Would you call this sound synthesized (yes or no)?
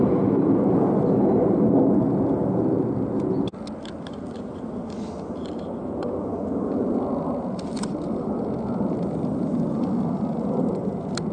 no